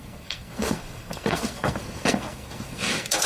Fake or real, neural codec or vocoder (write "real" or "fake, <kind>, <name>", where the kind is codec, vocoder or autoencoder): fake, codec, SNAC